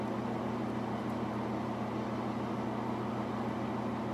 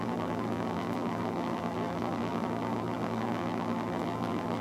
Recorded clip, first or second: first